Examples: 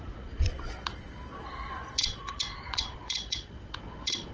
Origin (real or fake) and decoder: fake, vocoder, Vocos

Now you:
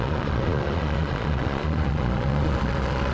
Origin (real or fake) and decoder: fake, vocoder, Vocos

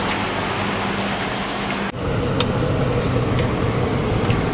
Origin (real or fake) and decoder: real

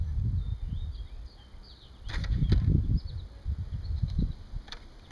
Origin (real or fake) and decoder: real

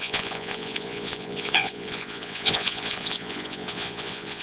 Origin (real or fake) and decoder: fake, vocoder, Vocos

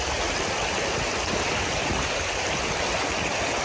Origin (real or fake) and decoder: real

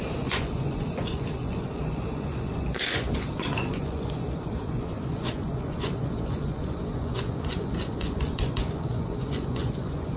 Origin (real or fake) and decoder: fake, vocoder, Vocos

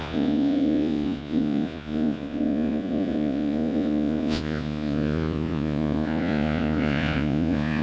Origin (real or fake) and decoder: fake, vocoder, Vocos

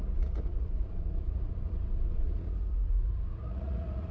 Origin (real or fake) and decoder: fake, vocoder, Vocos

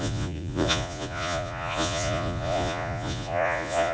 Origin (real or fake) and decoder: fake, vocoder, Vocos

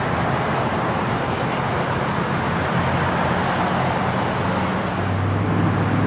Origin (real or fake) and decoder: real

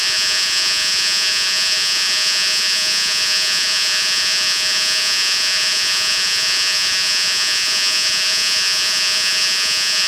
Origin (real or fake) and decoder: fake, vocoder, Vocos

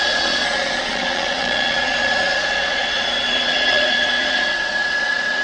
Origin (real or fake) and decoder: fake, vocoder, Vocos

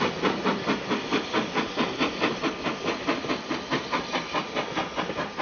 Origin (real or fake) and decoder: real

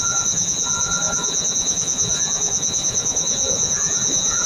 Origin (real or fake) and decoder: fake, vocoder, Vocos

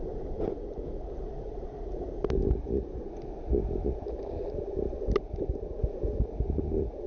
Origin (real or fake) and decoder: real